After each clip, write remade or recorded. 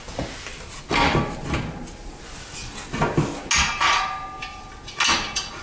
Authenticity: recorded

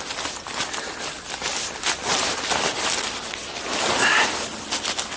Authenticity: recorded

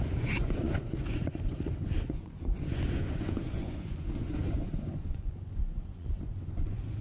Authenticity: remade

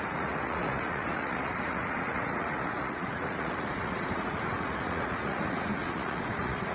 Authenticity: remade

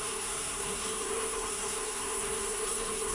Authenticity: remade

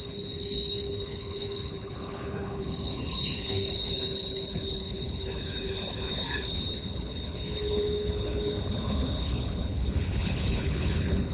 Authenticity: remade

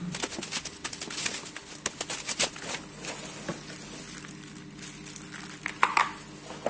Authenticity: recorded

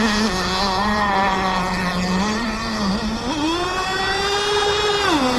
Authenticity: recorded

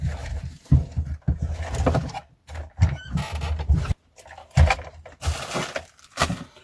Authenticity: recorded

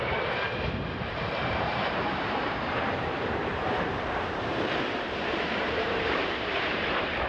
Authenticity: remade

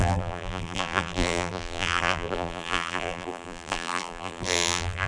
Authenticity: remade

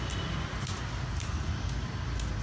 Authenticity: recorded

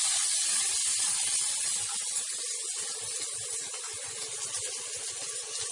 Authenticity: recorded